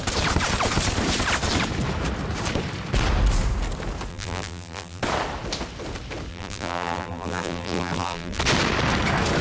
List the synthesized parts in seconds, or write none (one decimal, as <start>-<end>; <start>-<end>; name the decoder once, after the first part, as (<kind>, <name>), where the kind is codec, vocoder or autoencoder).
4.1-5.0 (vocoder, BigVGAN v2); 6.3-8.4